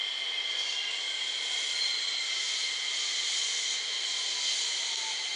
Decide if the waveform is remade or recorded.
recorded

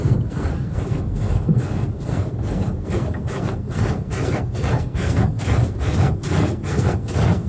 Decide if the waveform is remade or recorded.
remade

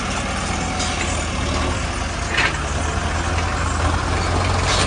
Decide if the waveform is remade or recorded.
recorded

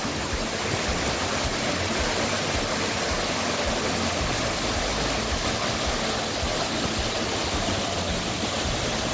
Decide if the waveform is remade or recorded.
recorded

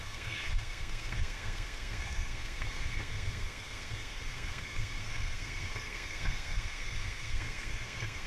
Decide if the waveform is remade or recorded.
remade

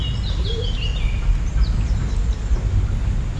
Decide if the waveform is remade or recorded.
recorded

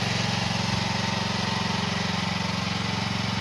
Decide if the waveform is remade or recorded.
recorded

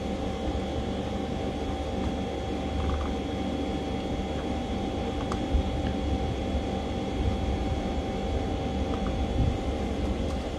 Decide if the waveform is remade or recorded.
recorded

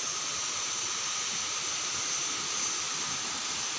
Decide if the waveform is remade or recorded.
recorded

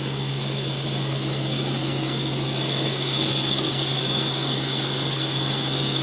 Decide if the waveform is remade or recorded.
remade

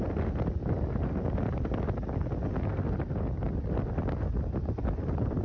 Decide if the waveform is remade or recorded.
recorded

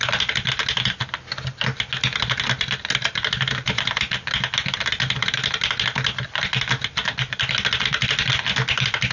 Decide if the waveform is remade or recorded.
recorded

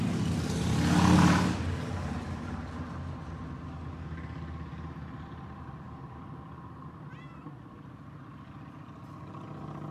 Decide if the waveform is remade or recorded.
recorded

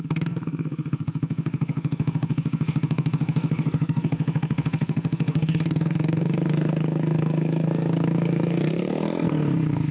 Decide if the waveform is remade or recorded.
remade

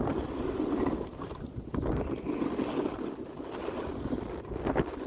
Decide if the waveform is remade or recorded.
recorded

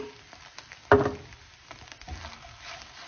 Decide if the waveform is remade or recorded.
recorded